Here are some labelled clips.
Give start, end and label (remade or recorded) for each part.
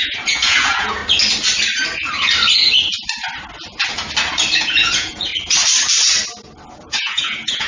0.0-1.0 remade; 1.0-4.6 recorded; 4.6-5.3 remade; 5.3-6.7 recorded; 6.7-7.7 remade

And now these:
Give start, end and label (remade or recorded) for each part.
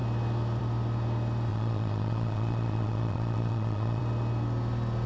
0.0-1.5 recorded; 1.5-4.0 remade; 4.0-5.1 recorded